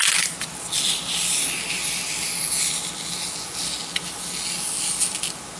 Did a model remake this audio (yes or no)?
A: no